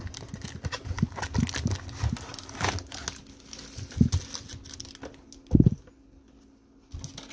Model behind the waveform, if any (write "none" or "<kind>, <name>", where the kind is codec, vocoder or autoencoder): none